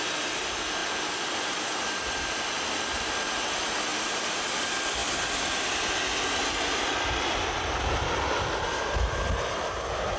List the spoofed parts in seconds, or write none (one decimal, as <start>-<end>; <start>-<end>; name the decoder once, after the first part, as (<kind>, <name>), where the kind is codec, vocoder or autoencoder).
none